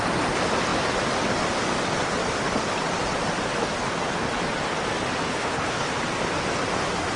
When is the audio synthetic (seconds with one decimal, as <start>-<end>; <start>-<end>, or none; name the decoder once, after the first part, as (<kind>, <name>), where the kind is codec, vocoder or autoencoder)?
5.3-5.9 (codec, HILCodec)